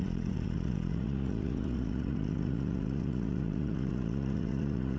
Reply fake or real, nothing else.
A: fake